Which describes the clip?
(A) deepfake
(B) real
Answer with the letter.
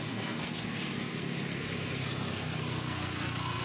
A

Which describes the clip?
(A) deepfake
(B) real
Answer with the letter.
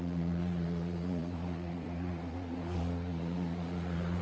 A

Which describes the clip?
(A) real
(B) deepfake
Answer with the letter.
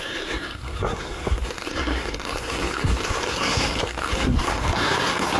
B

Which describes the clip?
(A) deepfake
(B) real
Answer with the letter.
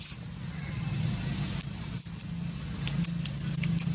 B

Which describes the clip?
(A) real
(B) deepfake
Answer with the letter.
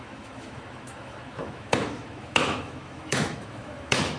B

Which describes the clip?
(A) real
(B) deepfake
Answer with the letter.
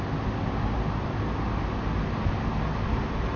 A